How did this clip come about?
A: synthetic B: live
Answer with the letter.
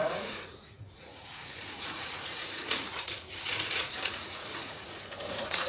A